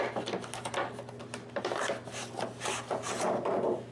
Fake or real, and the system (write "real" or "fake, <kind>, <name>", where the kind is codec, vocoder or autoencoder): real